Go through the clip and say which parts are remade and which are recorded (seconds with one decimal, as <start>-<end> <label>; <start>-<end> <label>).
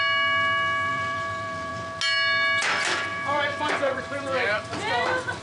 0.0-0.9 recorded; 0.9-1.7 remade; 1.7-3.1 recorded; 3.1-5.4 remade